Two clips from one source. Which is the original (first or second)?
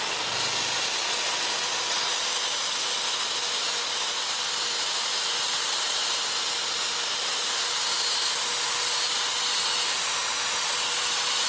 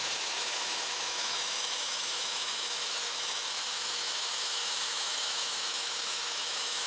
first